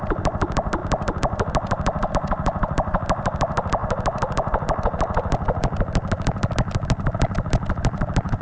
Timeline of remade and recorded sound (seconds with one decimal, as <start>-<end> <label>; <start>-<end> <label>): 0.0-8.4 recorded